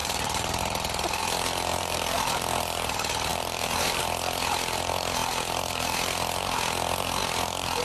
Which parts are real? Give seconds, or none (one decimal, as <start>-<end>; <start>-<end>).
0.6-1.7; 2.6-3.3; 4.0-7.8